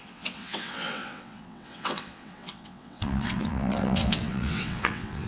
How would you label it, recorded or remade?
remade